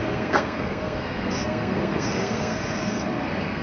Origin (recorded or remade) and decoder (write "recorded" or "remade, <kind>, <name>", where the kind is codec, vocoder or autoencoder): remade, codec, SNAC